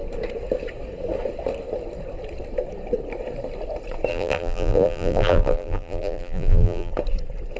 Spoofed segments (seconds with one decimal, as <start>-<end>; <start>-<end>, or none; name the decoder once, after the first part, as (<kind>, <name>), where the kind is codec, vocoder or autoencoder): 4.1-6.9 (vocoder, BigVGAN v2)